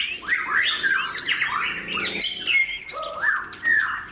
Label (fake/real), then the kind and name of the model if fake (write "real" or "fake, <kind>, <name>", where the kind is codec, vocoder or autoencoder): real